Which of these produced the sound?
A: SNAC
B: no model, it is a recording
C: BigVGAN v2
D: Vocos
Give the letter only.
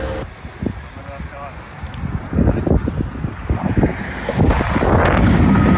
B